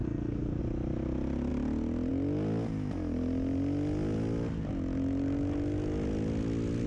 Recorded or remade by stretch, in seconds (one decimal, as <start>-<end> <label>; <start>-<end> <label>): 0.0-0.6 remade; 0.6-6.9 recorded